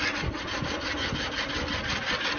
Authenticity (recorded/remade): recorded